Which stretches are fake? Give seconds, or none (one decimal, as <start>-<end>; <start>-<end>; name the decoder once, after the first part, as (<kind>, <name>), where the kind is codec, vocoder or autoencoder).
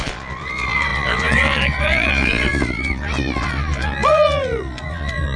0.0-5.4 (vocoder, Vocos)